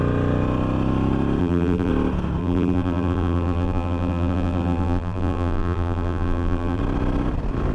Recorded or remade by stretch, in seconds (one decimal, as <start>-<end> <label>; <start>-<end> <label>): 0.0-1.4 recorded; 1.4-1.9 remade; 1.9-2.4 recorded; 2.4-6.8 remade; 6.8-7.7 recorded